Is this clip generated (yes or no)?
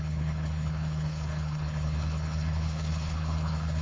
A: yes